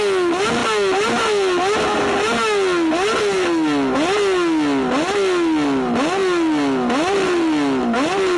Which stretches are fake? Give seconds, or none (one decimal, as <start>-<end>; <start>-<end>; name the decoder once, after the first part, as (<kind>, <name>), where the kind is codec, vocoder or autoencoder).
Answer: none